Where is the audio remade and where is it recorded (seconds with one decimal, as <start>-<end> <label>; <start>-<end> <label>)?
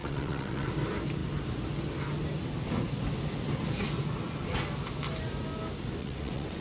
0.0-0.7 remade; 0.7-6.0 recorded; 6.0-6.6 remade